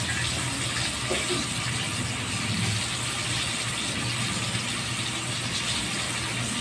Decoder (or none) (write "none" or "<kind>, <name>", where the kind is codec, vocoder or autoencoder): none